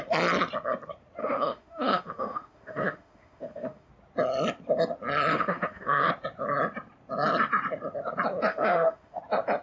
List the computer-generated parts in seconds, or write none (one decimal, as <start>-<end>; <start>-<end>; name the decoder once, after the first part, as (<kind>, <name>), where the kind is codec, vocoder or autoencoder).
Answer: 1.2-3.9 (autoencoder, DAC-VAE); 5.3-6.1; 8.5-9.2